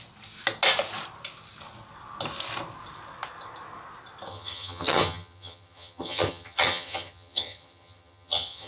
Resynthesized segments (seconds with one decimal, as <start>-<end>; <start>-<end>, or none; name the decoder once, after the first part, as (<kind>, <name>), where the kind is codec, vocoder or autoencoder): 4.3-8.7 (vocoder, HiFi-GAN)

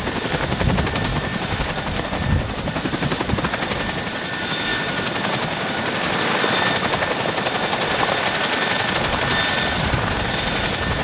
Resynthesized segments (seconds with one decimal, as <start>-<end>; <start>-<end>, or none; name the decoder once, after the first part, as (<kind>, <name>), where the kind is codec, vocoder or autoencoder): 1.1-3.4 (vocoder, BigVGAN v2)